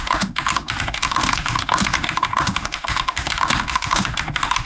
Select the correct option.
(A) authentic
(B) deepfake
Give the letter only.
B